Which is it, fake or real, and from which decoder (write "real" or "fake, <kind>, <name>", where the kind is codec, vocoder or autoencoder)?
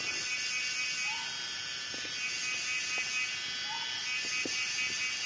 real